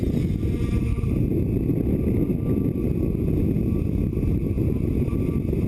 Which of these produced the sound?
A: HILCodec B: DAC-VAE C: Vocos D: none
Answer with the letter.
D